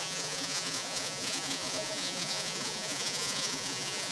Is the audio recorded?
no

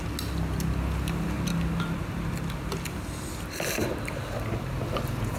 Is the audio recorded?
yes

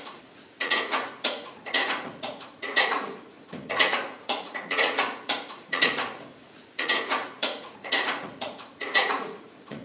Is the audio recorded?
no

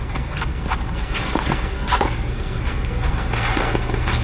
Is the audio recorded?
no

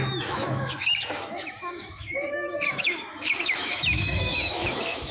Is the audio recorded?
no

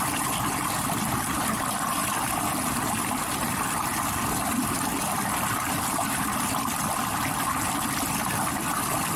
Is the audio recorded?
yes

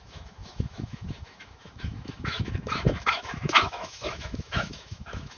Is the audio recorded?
no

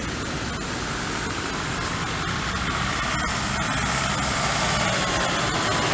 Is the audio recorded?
yes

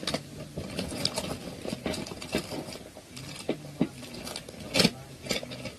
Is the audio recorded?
yes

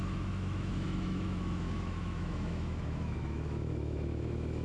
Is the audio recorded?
no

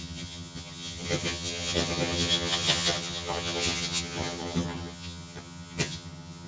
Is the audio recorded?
no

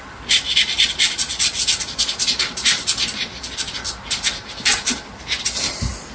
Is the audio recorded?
yes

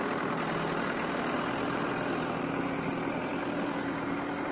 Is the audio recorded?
yes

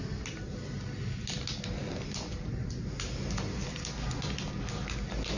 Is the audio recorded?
yes